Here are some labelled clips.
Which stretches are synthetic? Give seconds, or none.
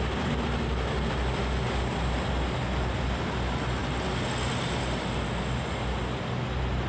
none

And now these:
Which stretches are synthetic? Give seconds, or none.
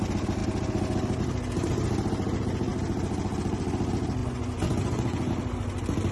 4.2-5.3 (vocoder, Vocos)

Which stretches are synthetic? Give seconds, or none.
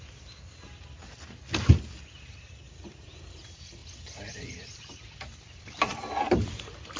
5.9-6.5 (vocoder, BigVGAN v2)